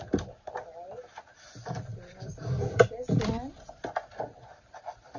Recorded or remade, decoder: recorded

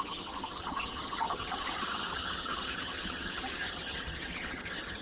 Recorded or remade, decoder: remade, vocoder, HiFi-GAN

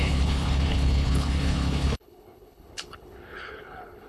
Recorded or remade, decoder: remade, codec, HILCodec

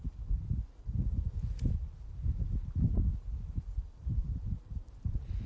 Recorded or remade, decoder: remade, vocoder, BigVGAN v2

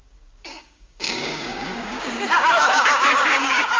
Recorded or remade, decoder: remade, codec, DAC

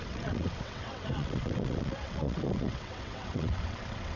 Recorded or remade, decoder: remade, vocoder, WaveNeXt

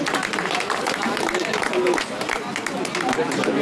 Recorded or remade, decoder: recorded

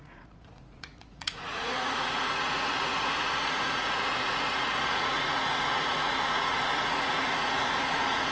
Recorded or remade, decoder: remade, vocoder, Vocos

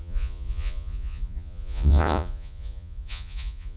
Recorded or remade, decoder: remade, vocoder, Vocos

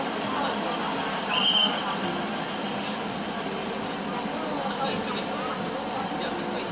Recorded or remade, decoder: recorded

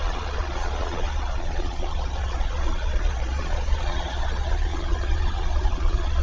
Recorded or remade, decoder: remade, vocoder, Vocos